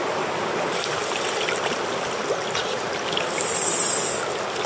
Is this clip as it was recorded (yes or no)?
yes